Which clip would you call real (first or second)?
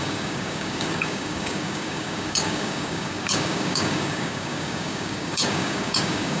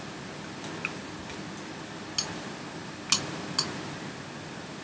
second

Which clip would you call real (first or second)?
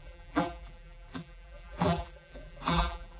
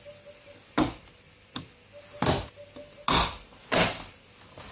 second